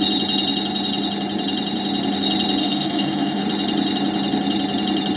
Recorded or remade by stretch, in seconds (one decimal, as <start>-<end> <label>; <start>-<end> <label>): 0.0-2.6 recorded; 2.6-3.4 remade; 3.4-5.2 recorded